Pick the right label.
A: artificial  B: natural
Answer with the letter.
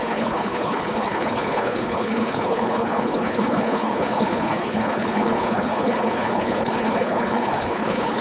A